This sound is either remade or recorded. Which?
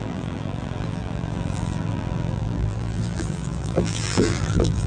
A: remade